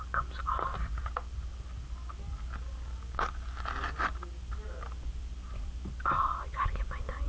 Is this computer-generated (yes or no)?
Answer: no